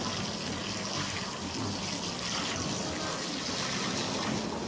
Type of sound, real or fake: real